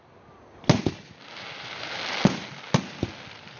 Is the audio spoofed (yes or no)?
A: no